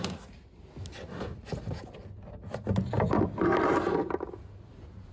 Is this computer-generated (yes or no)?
no